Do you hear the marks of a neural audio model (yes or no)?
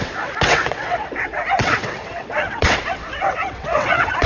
yes